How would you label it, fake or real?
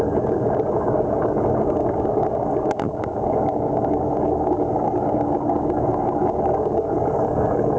fake